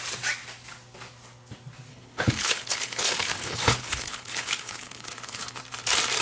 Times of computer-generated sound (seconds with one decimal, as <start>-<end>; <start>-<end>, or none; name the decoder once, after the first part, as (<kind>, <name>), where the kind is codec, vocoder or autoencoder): 1.9-5.6 (codec, HILCodec)